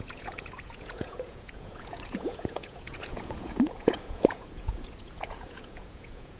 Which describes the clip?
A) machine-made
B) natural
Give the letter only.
A